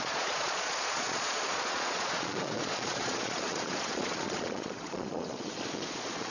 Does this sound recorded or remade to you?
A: remade